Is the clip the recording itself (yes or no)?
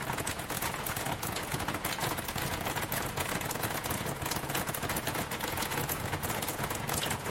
no